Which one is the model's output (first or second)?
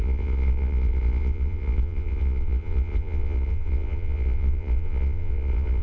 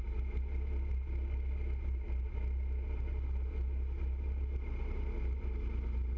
first